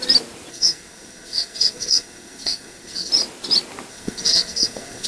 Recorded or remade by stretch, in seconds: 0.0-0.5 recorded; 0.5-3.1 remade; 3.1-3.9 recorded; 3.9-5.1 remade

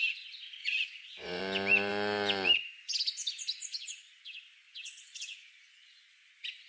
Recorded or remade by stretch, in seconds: 0.0-0.6 recorded; 0.6-1.4 remade; 1.4-6.7 recorded

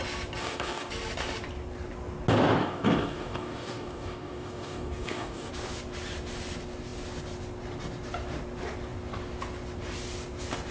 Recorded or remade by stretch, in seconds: 0.0-0.4 recorded; 0.4-0.9 remade; 0.9-2.6 recorded; 2.6-5.5 remade; 5.5-10.7 recorded

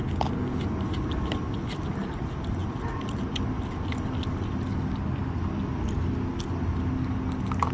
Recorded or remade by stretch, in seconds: 0.0-7.7 recorded

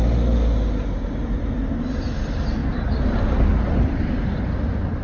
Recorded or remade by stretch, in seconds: 0.0-2.6 recorded; 2.6-5.0 remade